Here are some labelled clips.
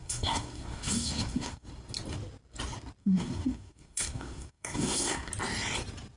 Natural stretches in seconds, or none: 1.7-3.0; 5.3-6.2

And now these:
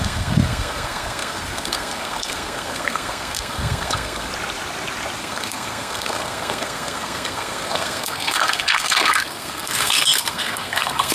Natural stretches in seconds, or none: 4.3-5.2

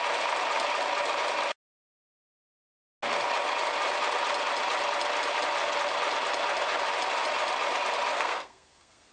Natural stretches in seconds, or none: 0.0-8.1

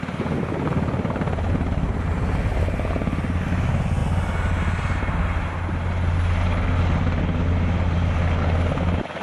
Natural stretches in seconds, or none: 0.0-9.2

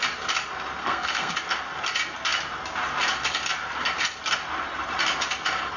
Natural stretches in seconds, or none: 0.0-0.8; 1.3-5.8

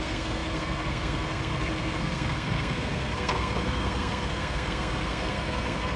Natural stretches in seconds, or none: none